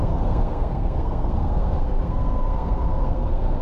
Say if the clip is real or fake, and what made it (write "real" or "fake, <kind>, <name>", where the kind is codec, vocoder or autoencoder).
fake, codec, SNAC